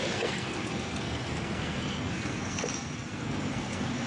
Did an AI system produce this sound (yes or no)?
yes